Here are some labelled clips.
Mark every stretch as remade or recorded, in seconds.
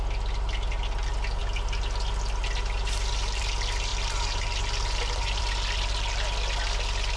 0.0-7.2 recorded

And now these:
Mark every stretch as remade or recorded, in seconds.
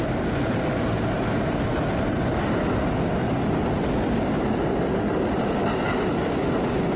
0.0-7.0 recorded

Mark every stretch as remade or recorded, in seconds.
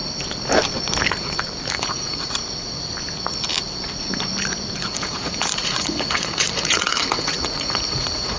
0.0-1.7 recorded; 1.7-2.4 remade; 2.4-4.8 recorded; 4.8-8.4 remade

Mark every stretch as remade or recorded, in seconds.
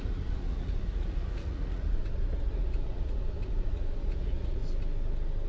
0.0-4.6 remade; 4.6-5.5 recorded